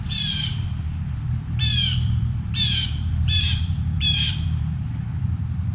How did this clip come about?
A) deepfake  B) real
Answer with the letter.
A